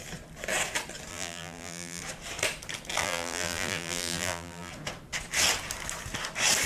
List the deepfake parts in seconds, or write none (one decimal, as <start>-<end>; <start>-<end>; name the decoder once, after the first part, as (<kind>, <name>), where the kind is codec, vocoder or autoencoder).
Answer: 1.1-2.0 (vocoder, BigVGAN v2); 3.0-4.7